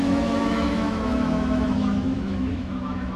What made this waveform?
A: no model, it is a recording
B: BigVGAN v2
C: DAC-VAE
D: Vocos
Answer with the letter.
C